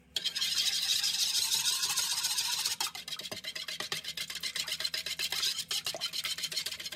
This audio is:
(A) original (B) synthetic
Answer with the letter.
A